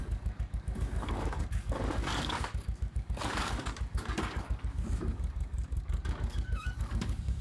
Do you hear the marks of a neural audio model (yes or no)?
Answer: yes